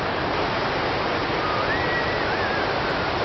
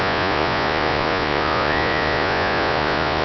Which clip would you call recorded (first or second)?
first